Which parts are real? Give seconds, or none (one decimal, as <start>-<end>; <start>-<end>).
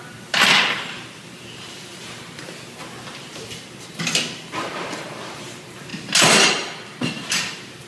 0.0-0.6; 5.9-7.1